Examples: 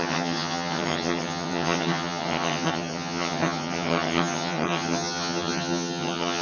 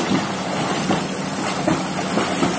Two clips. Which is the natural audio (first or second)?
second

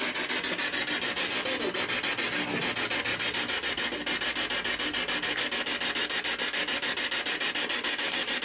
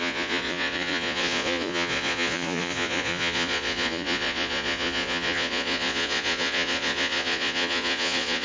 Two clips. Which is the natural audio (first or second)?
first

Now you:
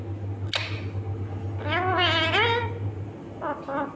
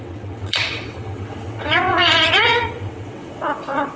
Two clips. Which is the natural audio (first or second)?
first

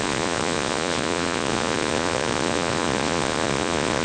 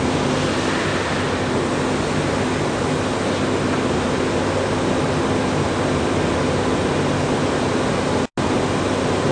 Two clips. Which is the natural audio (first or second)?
second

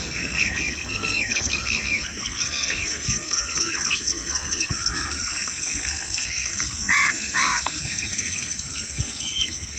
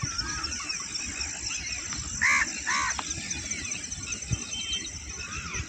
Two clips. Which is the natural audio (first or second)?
second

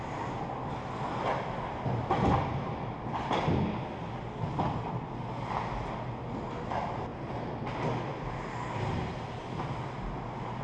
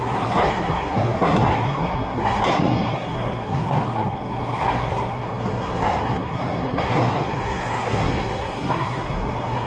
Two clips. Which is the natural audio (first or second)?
first